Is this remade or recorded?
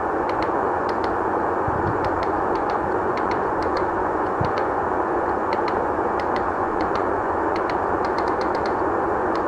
remade